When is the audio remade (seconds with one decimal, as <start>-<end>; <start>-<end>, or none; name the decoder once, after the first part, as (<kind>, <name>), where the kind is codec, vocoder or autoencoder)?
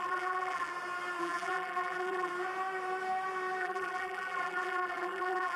0.0-0.7 (vocoder, BigVGAN v2); 1.2-2.3; 3.6-5.6